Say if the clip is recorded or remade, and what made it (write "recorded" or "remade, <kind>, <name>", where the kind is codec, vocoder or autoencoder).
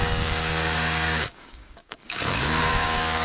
remade, codec, DAC